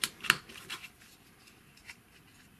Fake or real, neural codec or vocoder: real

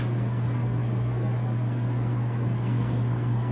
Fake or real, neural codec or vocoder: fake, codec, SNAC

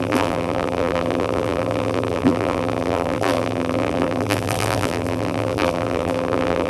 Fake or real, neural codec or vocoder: fake, vocoder, BigVGAN v2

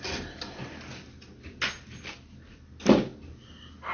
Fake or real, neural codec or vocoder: real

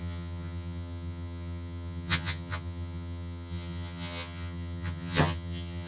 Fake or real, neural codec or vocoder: fake, vocoder, HiFi-GAN